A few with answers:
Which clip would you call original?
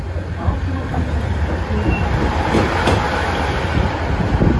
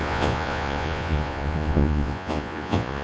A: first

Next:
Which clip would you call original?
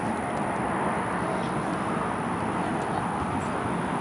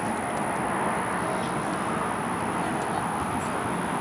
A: second